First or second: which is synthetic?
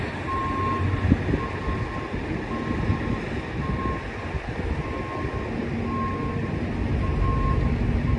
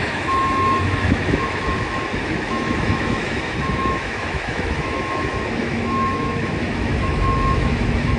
second